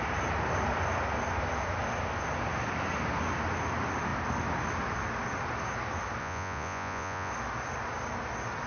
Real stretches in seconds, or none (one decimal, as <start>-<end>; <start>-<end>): 0.0-6.2; 7.3-8.7